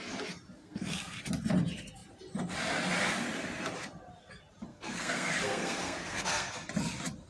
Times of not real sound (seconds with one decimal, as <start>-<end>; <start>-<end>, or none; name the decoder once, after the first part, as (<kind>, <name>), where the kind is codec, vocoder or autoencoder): 0.6-1.2 (codec, SNAC); 4.7-6.5